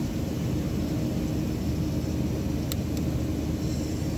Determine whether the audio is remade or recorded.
recorded